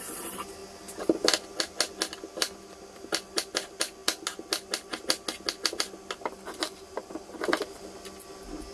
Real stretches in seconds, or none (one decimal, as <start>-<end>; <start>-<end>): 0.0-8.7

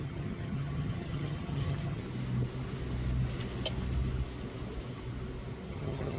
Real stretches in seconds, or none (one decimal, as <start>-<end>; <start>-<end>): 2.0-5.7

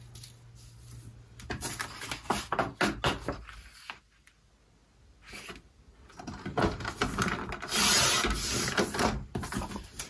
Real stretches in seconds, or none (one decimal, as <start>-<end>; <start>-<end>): 0.0-10.1

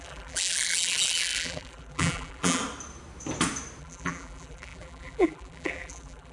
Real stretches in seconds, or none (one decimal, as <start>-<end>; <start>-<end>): 2.6-3.8

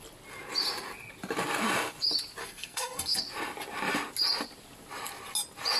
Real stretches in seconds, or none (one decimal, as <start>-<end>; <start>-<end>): 0.0-2.4; 3.2-5.8